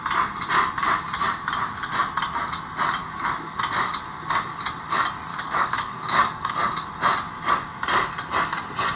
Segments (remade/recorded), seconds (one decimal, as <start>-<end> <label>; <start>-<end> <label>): 0.0-3.0 recorded; 3.0-3.6 remade; 3.6-5.3 recorded; 5.3-6.5 remade; 6.5-9.0 recorded